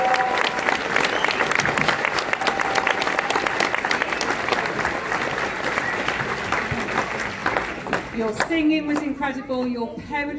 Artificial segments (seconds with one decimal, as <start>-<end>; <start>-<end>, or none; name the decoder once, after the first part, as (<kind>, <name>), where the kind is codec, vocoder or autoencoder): none